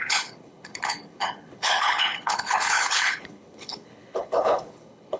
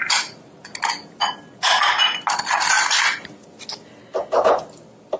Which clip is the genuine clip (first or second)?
second